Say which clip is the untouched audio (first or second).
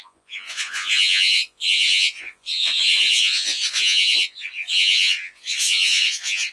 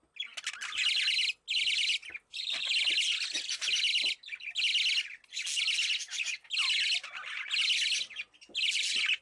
second